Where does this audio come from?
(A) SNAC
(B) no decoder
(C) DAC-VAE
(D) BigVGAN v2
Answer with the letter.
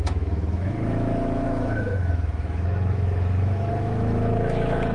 C